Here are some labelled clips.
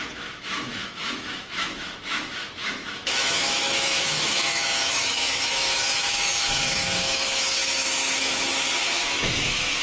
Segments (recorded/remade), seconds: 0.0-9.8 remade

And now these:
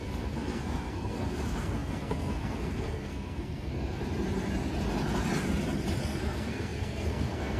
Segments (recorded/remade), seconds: 0.0-4.0 remade; 4.0-6.0 recorded; 6.0-7.6 remade

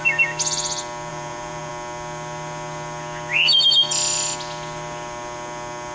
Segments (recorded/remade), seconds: 0.0-1.1 recorded; 1.1-1.7 remade; 1.7-5.9 recorded